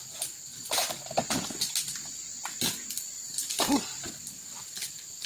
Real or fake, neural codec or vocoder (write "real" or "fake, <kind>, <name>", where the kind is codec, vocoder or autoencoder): real